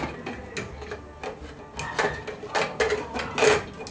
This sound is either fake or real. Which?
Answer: real